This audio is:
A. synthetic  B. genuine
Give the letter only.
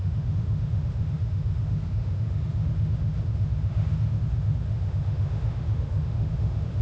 A